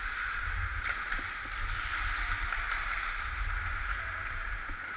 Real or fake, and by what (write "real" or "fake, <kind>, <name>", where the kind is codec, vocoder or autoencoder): real